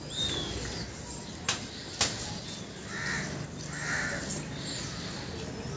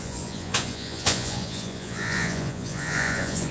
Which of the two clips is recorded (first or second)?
first